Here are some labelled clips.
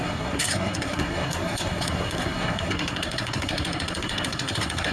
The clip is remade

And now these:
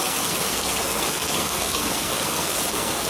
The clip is remade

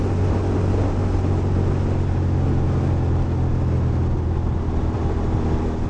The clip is recorded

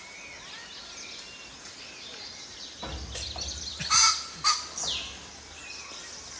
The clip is recorded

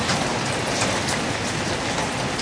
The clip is recorded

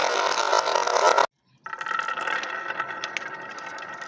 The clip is recorded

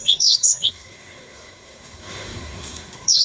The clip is remade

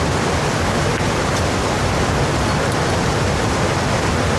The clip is recorded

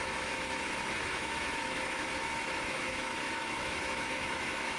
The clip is remade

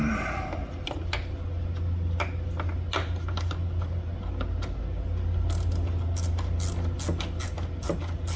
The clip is recorded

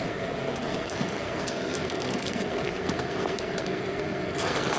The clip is remade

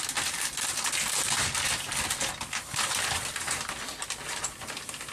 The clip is recorded